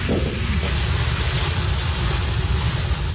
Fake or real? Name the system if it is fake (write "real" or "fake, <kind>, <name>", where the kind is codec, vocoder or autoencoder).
real